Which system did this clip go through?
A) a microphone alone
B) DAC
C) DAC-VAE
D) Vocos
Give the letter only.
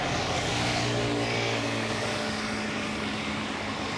B